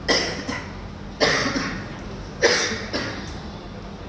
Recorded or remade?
recorded